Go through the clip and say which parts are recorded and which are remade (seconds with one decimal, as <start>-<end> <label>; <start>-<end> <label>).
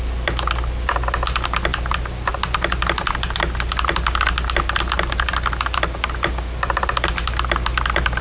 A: 0.0-8.2 recorded